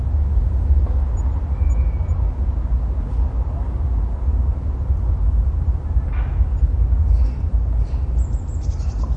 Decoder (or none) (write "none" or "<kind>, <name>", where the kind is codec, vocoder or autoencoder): none